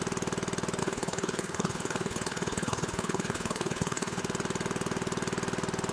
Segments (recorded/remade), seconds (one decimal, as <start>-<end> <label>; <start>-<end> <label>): 0.0-0.8 recorded; 0.8-4.2 remade; 4.2-5.9 recorded